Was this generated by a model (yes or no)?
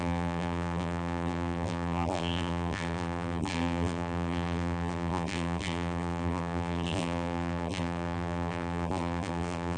yes